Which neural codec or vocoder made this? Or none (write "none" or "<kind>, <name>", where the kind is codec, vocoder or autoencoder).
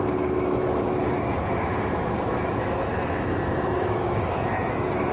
autoencoder, DAC-VAE